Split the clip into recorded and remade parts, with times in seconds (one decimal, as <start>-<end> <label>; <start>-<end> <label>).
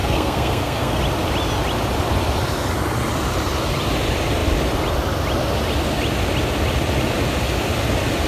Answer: 0.0-1.0 remade; 1.0-8.3 recorded